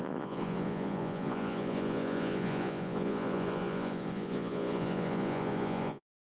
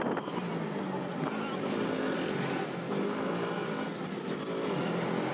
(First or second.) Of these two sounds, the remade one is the first